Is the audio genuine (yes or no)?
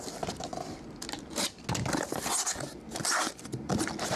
yes